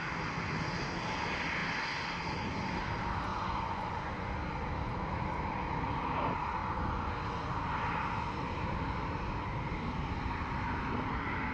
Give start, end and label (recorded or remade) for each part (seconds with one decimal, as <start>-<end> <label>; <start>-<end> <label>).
0.0-3.3 recorded; 3.3-4.3 remade; 4.3-6.6 recorded; 6.6-7.1 remade; 7.1-11.5 recorded